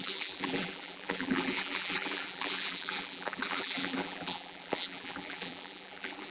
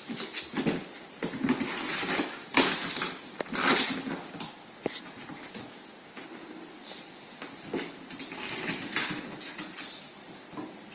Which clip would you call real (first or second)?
second